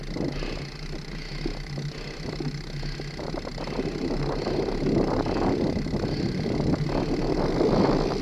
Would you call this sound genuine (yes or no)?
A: yes